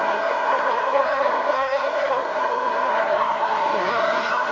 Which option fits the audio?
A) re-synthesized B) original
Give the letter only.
A